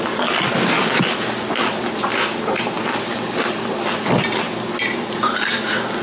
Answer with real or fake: real